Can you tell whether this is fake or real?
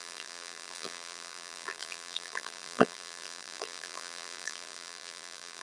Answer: fake